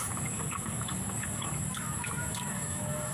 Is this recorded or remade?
remade